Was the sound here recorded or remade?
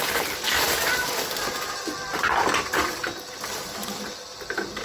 recorded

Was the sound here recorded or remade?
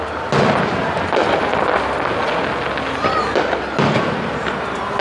recorded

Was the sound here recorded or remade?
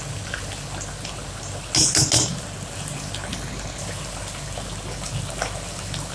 recorded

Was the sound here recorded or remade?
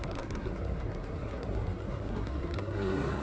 remade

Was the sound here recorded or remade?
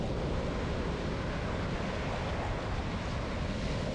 recorded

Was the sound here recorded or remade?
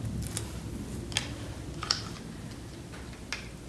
recorded